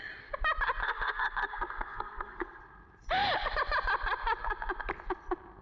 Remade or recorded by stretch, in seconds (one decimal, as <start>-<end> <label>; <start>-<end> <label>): 0.0-0.8 recorded; 0.8-2.6 remade; 2.6-5.6 recorded